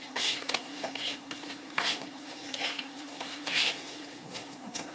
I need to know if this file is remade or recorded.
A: remade